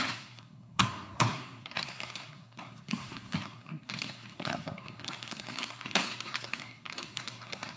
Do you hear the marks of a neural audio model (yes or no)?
yes